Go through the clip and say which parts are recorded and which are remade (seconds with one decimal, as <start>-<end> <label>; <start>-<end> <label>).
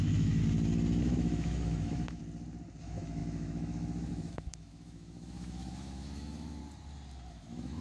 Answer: 0.0-0.4 remade; 0.4-1.0 recorded; 1.0-2.2 remade; 2.2-2.8 recorded; 2.8-6.6 remade; 6.6-7.3 recorded; 7.3-7.8 remade